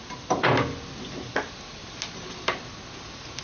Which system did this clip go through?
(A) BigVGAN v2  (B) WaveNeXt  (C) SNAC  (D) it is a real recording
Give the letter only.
D